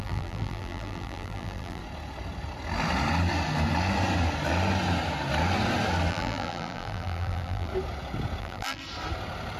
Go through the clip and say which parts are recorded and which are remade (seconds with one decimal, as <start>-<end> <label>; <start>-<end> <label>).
0.0-1.8 remade; 1.8-6.1 recorded; 6.1-7.7 remade; 7.7-8.4 recorded; 8.4-8.8 remade; 8.8-9.6 recorded